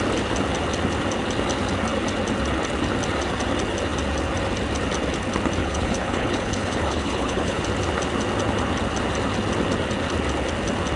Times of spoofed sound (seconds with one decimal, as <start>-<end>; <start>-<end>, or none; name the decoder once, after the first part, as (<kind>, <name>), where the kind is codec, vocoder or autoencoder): 5.6-7.6 (codec, HILCodec)